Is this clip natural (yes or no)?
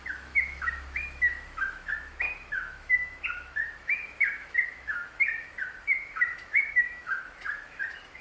no